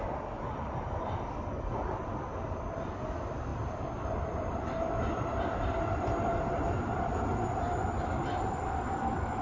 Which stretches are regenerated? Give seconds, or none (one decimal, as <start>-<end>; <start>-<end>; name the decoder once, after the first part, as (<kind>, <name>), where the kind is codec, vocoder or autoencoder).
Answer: 0.0-9.4 (vocoder, BigVGAN v2)